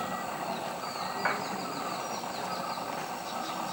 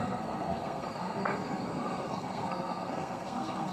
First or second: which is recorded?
first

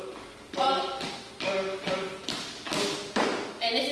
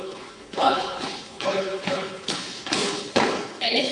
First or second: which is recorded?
first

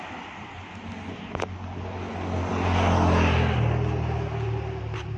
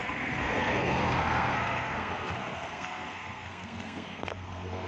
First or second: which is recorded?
first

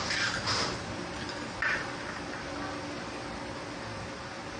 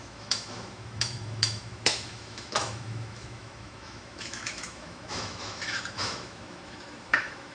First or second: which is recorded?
first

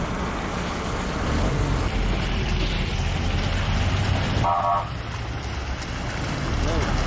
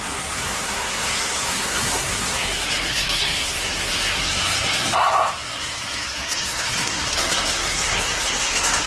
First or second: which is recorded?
first